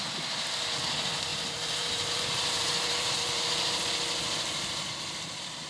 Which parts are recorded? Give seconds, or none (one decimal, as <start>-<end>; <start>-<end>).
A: 0.0-1.3; 3.8-5.7